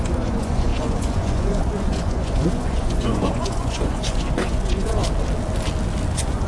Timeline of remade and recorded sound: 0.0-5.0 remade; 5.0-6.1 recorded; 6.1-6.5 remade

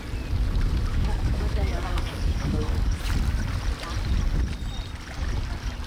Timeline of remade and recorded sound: 0.0-0.9 recorded; 0.9-3.0 remade; 3.0-5.9 recorded

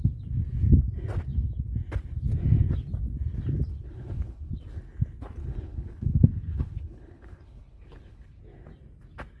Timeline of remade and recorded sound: 0.0-3.7 recorded; 3.7-4.5 remade; 4.5-5.4 recorded; 5.4-8.4 remade; 8.4-9.4 recorded

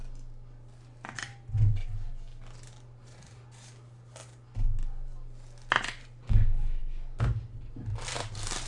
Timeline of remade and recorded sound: 0.0-8.7 recorded

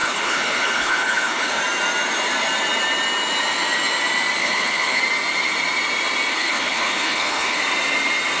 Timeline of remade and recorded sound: 0.0-1.6 remade; 1.6-4.4 recorded; 4.4-5.0 remade; 5.0-6.3 recorded; 6.3-7.6 remade; 7.6-8.4 recorded

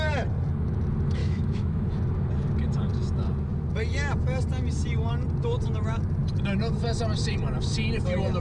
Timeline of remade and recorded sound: 0.0-1.2 recorded; 1.2-1.9 remade; 1.9-8.4 recorded

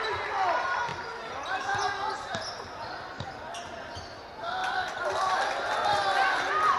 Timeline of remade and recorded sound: 0.0-6.8 recorded